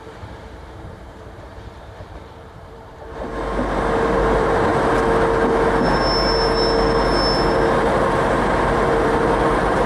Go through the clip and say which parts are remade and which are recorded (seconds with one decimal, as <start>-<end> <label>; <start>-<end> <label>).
0.0-3.3 remade; 3.3-4.1 recorded; 4.1-4.7 remade; 4.7-7.8 recorded; 7.8-9.9 remade